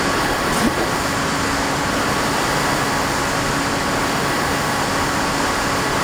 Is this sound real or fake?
real